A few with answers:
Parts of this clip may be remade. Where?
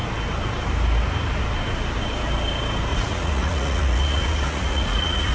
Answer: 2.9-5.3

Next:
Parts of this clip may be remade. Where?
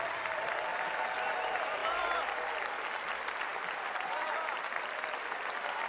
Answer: 0.0-5.9